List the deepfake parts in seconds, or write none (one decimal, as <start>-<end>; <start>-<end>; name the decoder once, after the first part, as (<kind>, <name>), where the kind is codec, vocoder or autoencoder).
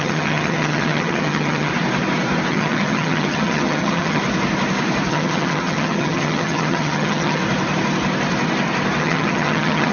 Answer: 0.0-1.7 (vocoder, HiFi-GAN); 2.5-4.2; 5.1-7.4; 9.0-9.9